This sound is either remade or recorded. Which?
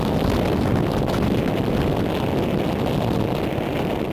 recorded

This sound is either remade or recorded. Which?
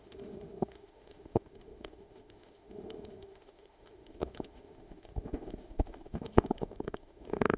remade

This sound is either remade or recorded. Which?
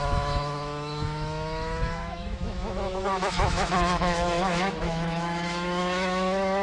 remade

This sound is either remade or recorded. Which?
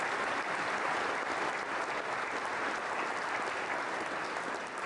recorded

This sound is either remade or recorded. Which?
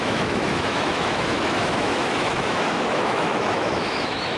remade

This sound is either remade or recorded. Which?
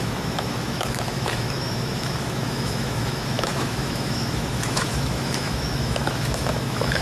remade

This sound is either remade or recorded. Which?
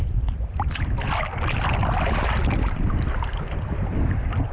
recorded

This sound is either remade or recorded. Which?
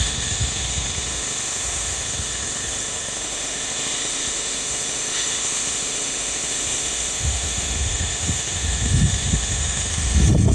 remade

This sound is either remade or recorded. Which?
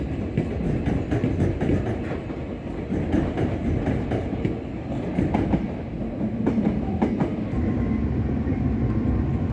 recorded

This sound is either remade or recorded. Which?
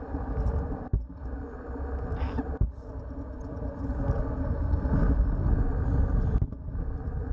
recorded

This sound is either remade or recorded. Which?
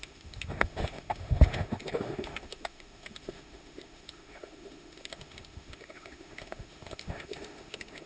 remade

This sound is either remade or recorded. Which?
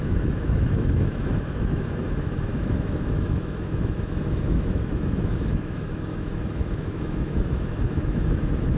remade